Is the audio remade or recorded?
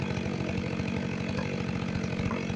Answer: recorded